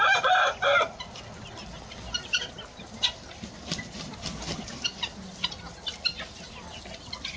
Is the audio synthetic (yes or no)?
no